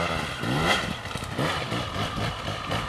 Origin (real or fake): real